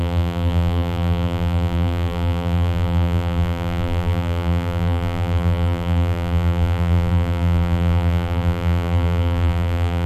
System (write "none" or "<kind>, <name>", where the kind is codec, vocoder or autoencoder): vocoder, BigVGAN v2